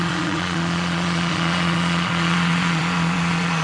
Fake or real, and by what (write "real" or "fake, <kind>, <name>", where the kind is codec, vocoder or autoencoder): fake, vocoder, Vocos